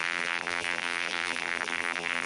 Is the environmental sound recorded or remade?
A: remade